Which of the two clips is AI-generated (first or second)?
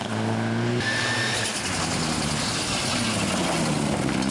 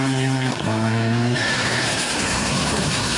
second